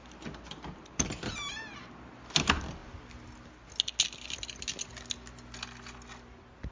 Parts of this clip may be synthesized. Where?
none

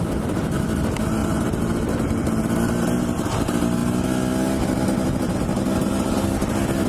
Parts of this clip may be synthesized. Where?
none

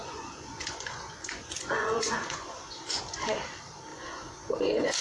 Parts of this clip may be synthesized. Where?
0.0-3.0 (vocoder, Vocos); 3.9-5.0

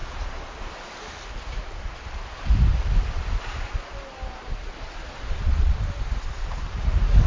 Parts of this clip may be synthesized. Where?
0.0-0.6 (vocoder, Vocos); 4.6-5.8